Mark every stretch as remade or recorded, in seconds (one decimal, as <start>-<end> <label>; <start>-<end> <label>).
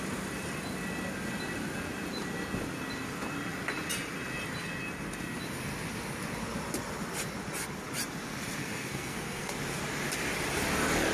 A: 0.0-8.6 recorded; 8.6-9.5 remade; 9.5-11.1 recorded